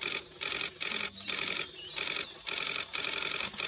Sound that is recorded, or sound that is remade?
recorded